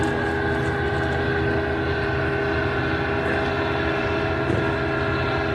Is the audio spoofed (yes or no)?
no